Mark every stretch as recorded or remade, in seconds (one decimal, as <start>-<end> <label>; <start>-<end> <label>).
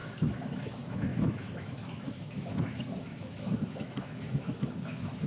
0.0-5.3 remade